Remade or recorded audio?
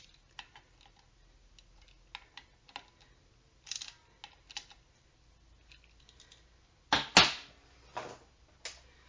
recorded